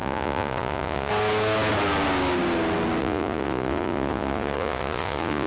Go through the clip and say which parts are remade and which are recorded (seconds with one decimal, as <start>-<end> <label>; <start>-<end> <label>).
0.0-1.1 remade; 1.1-3.0 recorded; 3.0-5.5 remade